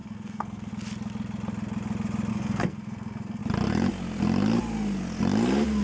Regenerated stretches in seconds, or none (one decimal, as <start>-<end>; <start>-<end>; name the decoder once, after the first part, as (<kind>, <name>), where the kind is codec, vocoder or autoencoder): 0.0-0.7 (codec, SNAC); 2.3-3.4